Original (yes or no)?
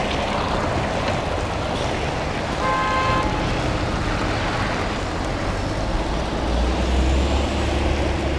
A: yes